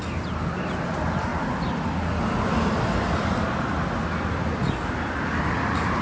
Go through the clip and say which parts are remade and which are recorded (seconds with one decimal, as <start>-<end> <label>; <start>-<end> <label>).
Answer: 0.0-6.0 recorded